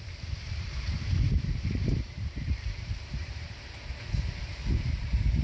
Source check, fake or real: fake